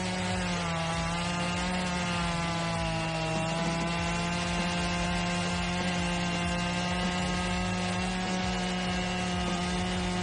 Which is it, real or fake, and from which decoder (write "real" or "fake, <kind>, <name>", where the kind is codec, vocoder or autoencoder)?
real